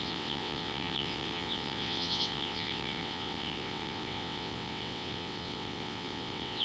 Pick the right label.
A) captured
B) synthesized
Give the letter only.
B